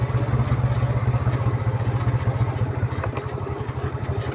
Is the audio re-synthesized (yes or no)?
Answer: no